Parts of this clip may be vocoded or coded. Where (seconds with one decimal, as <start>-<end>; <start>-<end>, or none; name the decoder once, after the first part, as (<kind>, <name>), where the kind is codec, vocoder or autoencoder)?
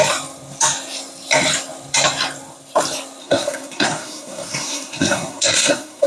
3.2-6.1 (codec, SNAC)